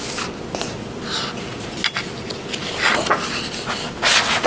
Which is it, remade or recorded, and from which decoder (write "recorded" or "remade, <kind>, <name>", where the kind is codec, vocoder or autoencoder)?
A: recorded